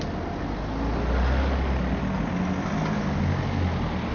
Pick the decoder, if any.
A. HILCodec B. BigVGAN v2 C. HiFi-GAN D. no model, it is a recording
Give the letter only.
D